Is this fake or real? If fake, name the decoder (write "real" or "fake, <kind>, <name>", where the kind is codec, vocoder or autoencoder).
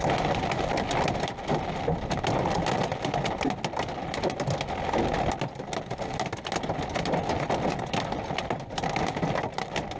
real